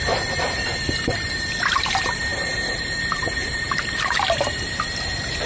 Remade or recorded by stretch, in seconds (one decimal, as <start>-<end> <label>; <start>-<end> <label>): 0.0-5.5 remade